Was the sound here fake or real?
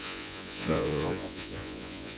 fake